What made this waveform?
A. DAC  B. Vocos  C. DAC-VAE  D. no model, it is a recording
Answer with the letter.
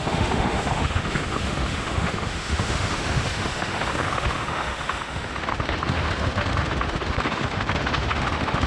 C